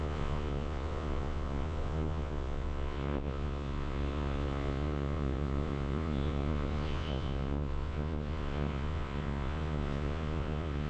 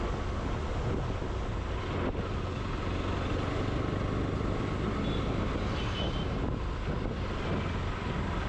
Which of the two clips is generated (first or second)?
first